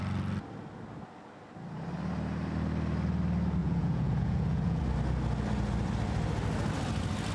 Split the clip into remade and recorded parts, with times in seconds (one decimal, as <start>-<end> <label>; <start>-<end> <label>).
0.0-3.6 recorded; 3.6-4.8 remade; 4.8-7.3 recorded